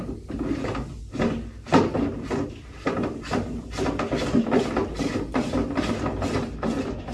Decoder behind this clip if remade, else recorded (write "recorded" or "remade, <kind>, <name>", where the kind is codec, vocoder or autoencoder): recorded